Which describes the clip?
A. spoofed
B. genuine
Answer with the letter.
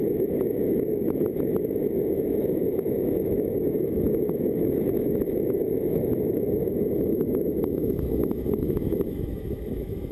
A